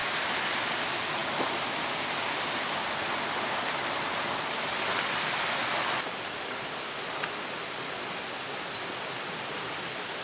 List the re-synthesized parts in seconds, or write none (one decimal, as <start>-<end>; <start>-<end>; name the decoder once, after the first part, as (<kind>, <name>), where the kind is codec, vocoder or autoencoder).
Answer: none